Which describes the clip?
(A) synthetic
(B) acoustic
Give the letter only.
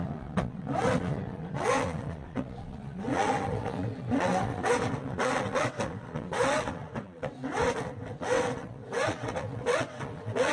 A